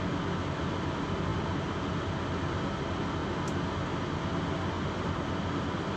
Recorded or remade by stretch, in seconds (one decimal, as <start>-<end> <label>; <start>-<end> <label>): 0.0-6.0 recorded